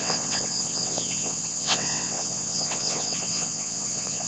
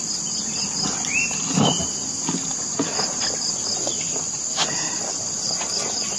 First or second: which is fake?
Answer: first